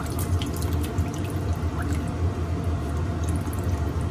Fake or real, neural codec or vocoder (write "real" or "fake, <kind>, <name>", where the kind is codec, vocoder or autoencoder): real